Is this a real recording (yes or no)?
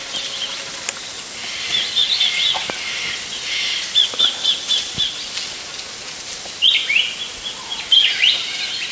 yes